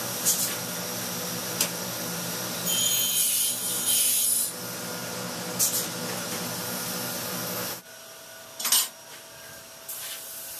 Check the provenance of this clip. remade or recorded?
recorded